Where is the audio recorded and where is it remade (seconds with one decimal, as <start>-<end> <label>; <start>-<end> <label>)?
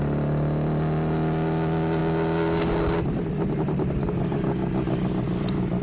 0.0-4.0 recorded; 4.0-4.9 remade; 4.9-5.8 recorded